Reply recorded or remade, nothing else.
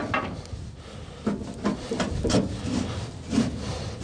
recorded